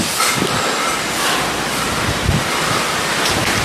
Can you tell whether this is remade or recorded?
recorded